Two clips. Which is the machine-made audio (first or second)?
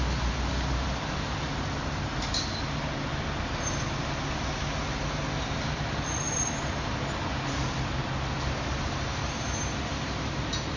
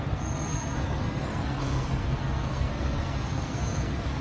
second